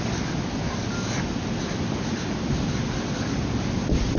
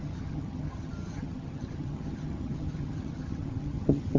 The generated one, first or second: second